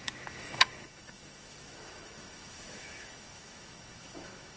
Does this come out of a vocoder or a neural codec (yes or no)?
yes